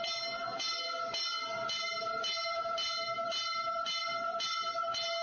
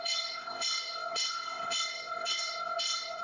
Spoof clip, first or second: second